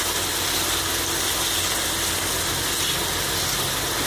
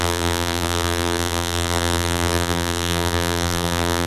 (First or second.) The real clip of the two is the first